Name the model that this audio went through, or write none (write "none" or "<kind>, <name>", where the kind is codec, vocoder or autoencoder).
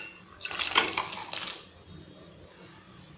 none